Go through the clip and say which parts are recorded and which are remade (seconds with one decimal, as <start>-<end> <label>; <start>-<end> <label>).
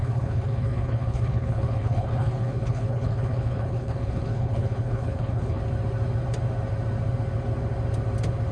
0.0-5.6 remade; 5.6-8.5 recorded